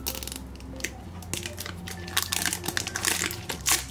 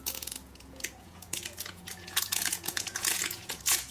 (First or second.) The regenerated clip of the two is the second